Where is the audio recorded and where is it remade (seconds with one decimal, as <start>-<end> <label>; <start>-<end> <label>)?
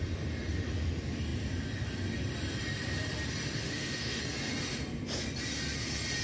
0.0-3.6 recorded; 3.6-4.2 remade; 4.2-6.2 recorded